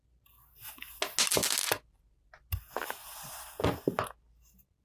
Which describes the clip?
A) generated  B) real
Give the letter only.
B